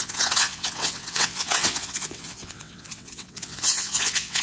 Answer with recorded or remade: remade